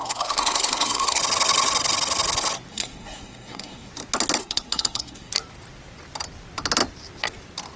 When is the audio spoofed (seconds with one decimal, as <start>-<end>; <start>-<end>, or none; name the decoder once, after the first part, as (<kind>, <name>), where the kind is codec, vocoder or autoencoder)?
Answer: 0.0-1.2 (codec, SNAC); 2.7-3.9; 4.4-5.3

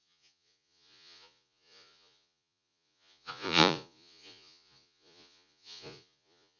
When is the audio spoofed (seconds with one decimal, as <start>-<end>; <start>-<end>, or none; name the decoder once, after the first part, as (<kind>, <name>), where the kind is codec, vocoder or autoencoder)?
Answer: 0.0-6.6 (vocoder, Vocos)